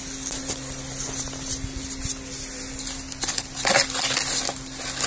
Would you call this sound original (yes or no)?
yes